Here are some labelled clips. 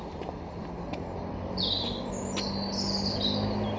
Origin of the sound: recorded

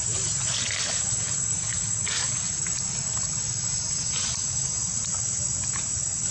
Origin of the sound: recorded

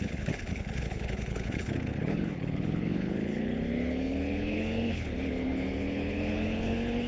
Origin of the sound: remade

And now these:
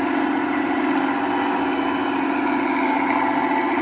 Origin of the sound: recorded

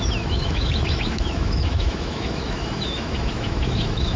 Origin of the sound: remade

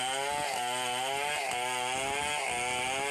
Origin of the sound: recorded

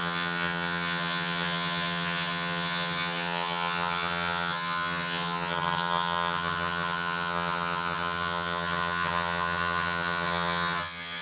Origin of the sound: remade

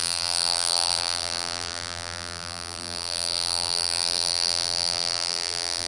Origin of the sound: remade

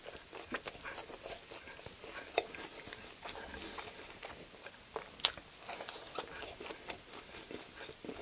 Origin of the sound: recorded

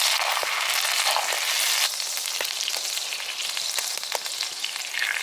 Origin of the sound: recorded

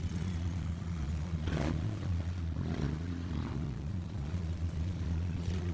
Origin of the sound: remade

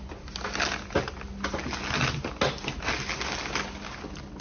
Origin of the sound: recorded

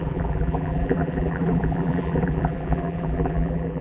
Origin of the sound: remade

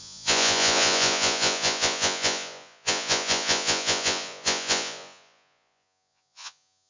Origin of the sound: remade